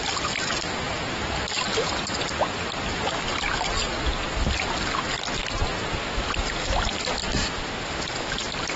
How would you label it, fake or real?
real